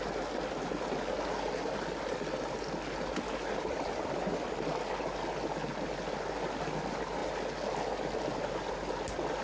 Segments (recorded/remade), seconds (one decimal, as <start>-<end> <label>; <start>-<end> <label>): 0.0-9.4 recorded